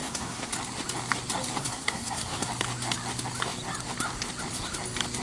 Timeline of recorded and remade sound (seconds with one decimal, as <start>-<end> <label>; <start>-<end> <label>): 0.0-0.5 remade; 0.5-1.6 recorded; 1.6-2.5 remade; 2.5-5.2 recorded